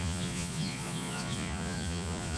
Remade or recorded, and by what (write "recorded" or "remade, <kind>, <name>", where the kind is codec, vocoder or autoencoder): remade, vocoder, Vocos